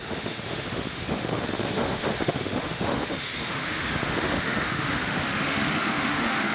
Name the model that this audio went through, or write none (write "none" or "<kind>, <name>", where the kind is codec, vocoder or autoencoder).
autoencoder, DAC-VAE